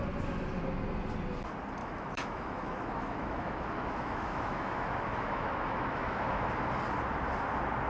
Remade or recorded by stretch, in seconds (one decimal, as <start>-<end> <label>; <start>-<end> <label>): 0.0-1.8 recorded; 1.8-6.5 remade; 6.5-7.9 recorded